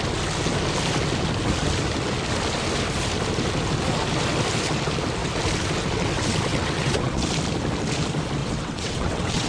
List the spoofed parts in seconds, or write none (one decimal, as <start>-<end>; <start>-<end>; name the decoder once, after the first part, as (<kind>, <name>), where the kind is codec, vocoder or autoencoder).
6.5-7.3 (vocoder, WaveNeXt); 8.4-9.5